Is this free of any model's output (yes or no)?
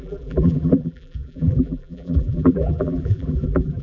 no